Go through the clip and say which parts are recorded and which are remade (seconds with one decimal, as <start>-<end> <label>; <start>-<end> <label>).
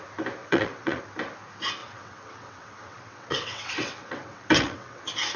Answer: 0.0-0.4 recorded; 0.4-1.0 remade; 1.0-1.8 recorded; 1.8-5.0 remade; 5.0-5.4 recorded